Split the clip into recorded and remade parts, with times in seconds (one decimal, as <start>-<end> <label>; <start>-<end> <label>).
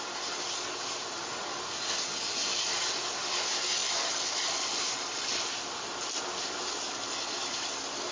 0.0-8.1 recorded